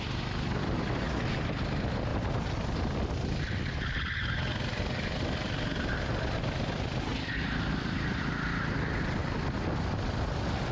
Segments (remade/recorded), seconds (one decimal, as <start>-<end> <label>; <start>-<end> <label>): 0.0-10.7 recorded